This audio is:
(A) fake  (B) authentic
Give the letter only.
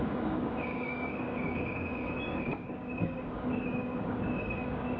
A